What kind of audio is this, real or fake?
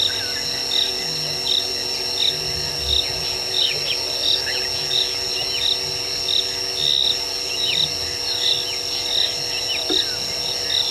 real